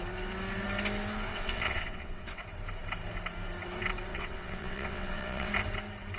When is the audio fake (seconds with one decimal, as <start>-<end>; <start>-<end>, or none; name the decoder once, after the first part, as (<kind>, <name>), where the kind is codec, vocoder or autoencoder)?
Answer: 1.3-2.4 (vocoder, WaveNeXt); 4.1-5.5